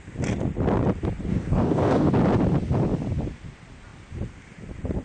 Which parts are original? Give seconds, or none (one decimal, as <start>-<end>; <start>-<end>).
0.0-1.3; 2.1-5.0